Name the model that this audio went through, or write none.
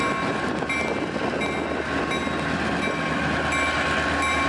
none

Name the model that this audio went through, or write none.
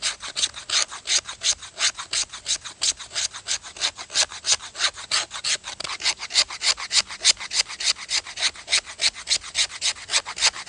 none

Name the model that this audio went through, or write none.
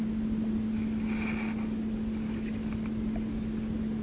none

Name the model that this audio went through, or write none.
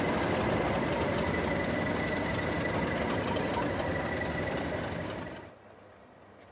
none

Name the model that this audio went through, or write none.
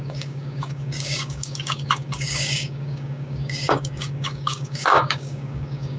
codec, DAC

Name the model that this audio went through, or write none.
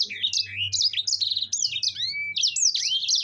none